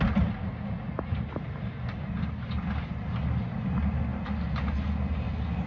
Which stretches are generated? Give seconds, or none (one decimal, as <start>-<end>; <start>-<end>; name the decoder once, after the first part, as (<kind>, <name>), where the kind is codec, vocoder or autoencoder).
none